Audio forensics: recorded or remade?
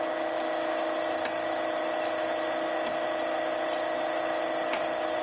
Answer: recorded